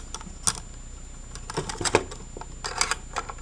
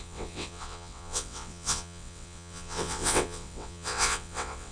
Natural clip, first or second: first